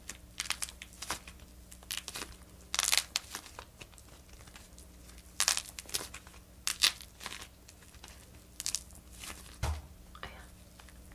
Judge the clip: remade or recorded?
recorded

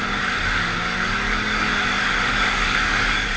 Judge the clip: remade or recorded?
remade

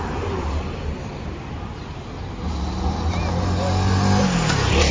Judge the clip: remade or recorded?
recorded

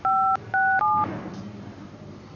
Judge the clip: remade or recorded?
recorded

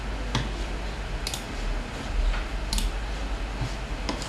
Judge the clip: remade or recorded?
recorded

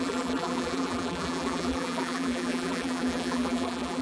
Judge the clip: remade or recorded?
remade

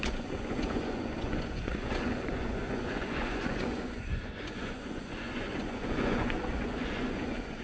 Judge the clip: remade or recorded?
remade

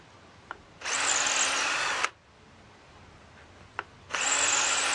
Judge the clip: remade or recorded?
recorded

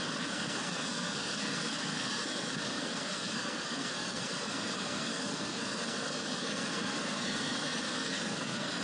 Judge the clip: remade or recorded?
remade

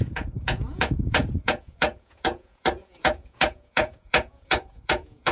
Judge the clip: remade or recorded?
remade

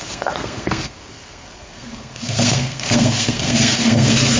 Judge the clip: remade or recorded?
remade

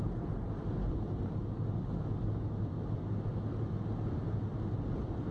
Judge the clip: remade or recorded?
recorded